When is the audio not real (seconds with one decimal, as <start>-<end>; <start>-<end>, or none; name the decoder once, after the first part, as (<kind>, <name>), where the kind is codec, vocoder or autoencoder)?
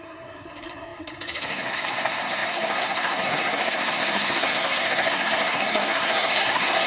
0.0-6.9 (codec, SNAC)